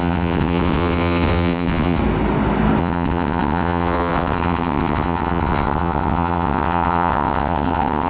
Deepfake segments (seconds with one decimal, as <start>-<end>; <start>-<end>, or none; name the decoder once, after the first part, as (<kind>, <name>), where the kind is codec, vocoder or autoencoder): 0.0-2.0 (vocoder, WaveNeXt); 2.8-8.1